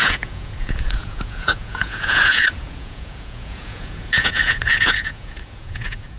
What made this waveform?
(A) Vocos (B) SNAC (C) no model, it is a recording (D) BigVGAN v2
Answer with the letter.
A